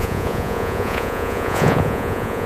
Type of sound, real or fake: fake